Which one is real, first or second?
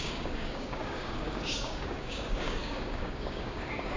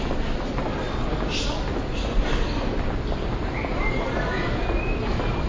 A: second